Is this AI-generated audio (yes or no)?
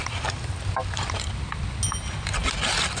no